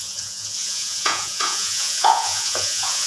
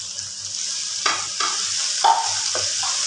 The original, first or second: second